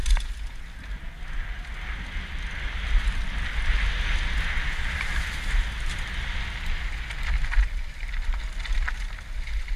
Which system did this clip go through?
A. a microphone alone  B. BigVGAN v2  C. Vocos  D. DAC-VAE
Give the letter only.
A